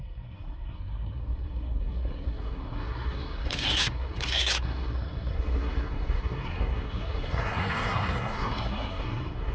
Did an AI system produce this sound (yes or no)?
yes